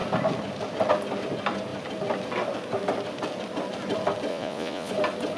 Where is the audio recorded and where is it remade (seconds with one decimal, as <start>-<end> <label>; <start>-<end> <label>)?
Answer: 0.0-4.3 recorded; 4.3-4.9 remade; 4.9-5.4 recorded